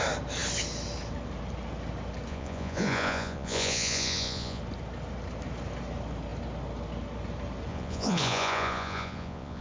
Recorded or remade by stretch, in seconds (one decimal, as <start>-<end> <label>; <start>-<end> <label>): 0.0-2.3 recorded; 2.3-4.6 remade; 4.6-7.7 recorded; 7.7-9.6 remade